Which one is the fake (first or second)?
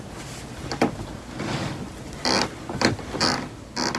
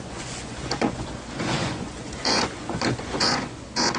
second